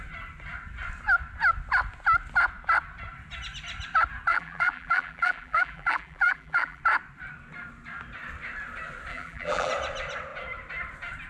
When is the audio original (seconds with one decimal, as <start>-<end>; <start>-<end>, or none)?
0.0-4.3; 6.8-9.1; 9.7-11.3